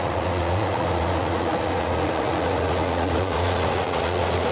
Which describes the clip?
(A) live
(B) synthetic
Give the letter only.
B